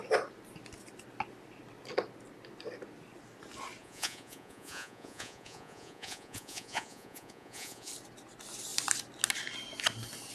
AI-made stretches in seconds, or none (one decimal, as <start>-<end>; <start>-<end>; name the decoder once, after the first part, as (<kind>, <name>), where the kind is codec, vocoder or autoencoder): 3.8-7.9 (vocoder, Vocos)